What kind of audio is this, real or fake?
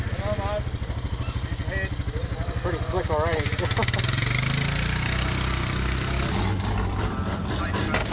real